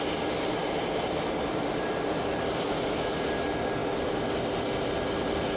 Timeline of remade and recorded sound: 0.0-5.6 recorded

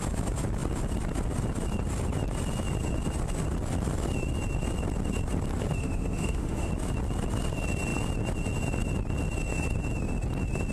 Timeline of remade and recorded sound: 0.0-5.8 recorded; 5.8-6.7 remade; 6.7-10.7 recorded

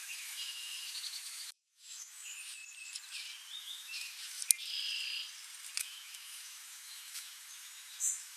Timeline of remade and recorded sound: 0.0-2.6 remade; 2.6-3.6 recorded; 3.6-4.4 remade; 4.4-5.8 recorded; 5.8-8.4 remade

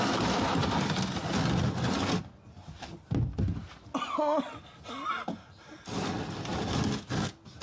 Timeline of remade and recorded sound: 0.0-7.6 recorded

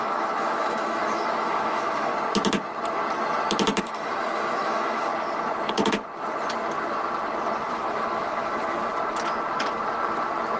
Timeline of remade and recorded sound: 0.0-2.1 remade; 2.1-3.8 recorded; 3.8-5.1 remade; 5.1-7.7 recorded; 7.7-8.9 remade; 8.9-10.6 recorded

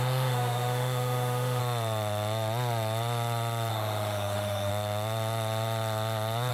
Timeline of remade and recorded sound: 0.0-1.6 remade; 1.6-3.7 recorded; 3.7-4.7 remade; 4.7-6.5 recorded

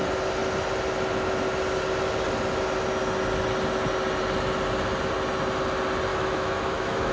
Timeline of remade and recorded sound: 0.0-6.1 recorded; 6.1-7.1 remade

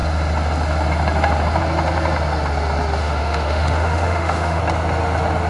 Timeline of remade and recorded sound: 0.0-3.0 recorded; 3.0-4.6 remade; 4.6-5.5 recorded